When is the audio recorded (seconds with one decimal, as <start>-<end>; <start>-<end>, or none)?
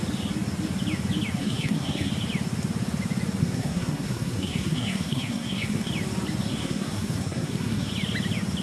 0.0-1.4; 2.1-3.4; 5.9-6.5; 7.9-8.6